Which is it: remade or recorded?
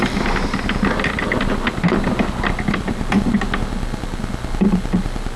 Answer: recorded